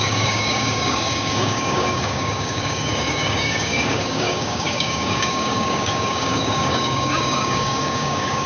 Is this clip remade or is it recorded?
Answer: remade